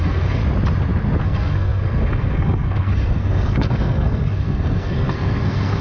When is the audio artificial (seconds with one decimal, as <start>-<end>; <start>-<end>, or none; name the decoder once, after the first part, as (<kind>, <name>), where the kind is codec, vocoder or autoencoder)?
0.0-0.4 (codec, SNAC); 1.2-5.8